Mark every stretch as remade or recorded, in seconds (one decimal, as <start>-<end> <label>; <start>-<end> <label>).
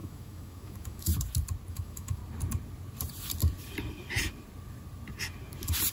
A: 0.0-1.1 remade; 1.1-1.7 recorded; 1.7-2.2 remade; 2.2-5.9 recorded